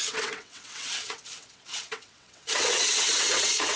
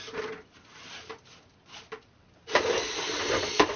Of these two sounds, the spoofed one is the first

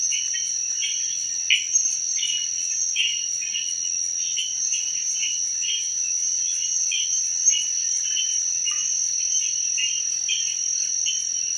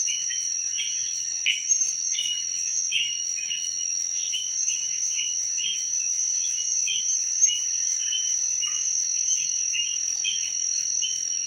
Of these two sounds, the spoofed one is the second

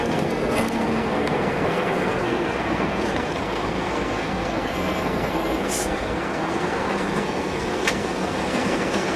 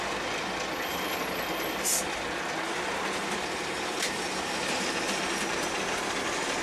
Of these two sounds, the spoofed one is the first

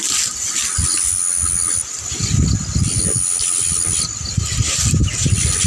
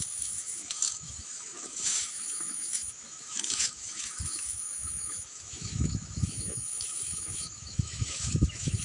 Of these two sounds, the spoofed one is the second